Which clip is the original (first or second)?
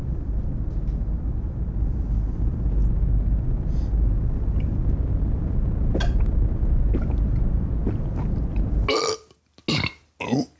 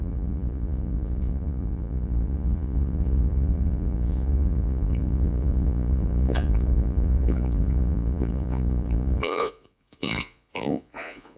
first